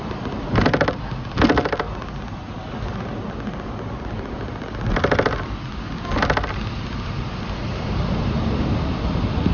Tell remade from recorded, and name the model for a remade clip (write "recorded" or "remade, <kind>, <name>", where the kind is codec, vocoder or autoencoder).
recorded